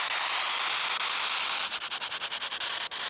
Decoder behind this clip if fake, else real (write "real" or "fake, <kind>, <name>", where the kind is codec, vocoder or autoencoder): real